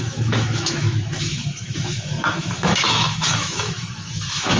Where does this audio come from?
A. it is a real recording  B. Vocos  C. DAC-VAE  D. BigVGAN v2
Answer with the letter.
C